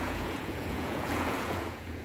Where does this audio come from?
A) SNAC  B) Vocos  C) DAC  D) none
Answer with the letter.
B